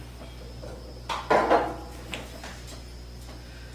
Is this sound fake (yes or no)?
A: no